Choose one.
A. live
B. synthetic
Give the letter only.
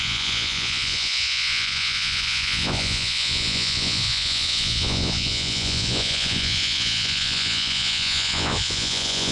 B